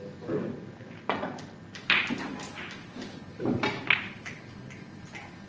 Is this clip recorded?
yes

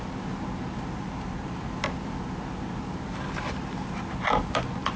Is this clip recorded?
yes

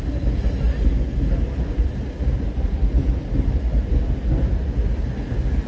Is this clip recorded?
yes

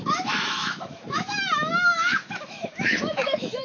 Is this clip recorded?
no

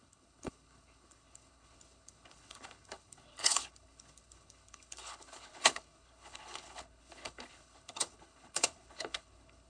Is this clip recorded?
no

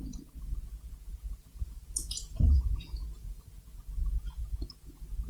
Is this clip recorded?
no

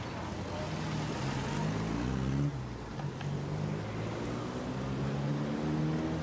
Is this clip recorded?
yes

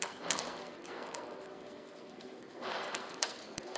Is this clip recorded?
no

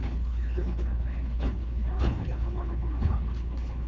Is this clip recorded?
no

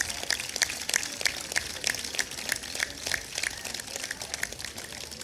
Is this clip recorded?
yes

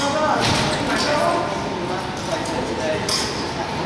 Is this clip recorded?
yes